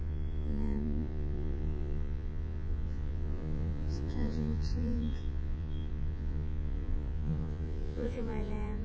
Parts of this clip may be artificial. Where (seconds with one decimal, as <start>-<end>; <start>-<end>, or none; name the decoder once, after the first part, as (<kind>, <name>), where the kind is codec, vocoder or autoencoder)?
0.0-8.8 (vocoder, Vocos)